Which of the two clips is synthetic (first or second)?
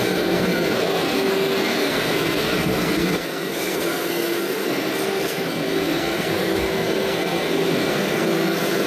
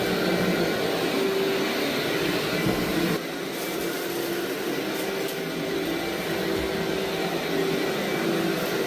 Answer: first